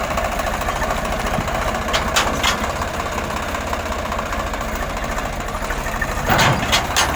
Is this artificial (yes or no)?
no